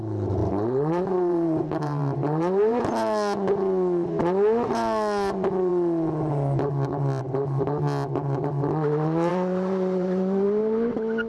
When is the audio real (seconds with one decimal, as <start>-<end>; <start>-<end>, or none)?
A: 0.0-0.4; 2.8-9.3; 10.9-11.3